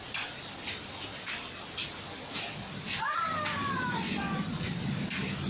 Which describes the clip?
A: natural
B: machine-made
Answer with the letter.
A